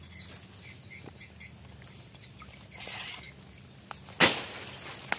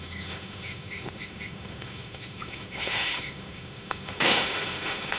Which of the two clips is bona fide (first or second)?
first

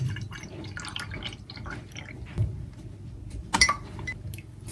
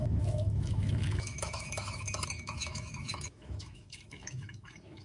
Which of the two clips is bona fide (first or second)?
first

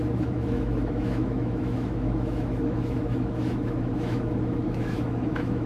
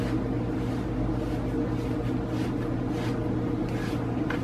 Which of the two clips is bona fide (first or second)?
second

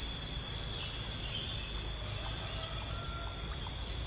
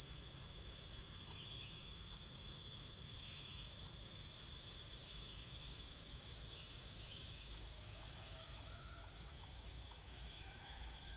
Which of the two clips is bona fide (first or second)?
first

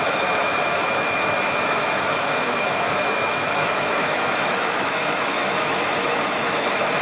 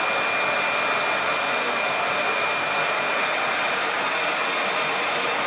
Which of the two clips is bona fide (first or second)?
second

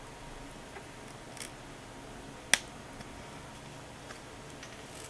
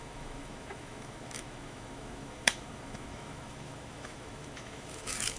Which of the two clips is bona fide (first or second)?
first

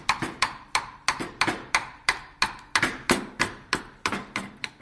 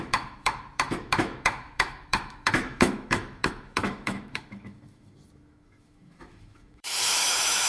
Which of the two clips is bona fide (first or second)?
first